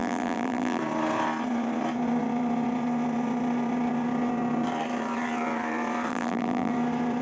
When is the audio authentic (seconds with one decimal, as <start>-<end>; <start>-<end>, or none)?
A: 0.8-6.1; 6.7-7.2